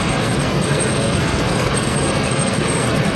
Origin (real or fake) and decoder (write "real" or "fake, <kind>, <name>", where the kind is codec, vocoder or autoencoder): fake, codec, SNAC